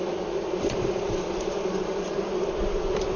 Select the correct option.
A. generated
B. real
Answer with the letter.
B